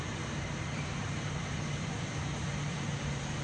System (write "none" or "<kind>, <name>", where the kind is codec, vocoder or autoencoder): vocoder, BigVGAN v2